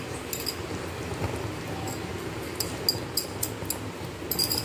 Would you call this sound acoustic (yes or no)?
yes